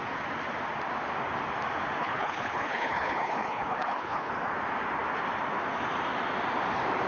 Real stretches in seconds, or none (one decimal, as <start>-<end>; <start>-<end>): 0.0-2.0; 4.3-7.1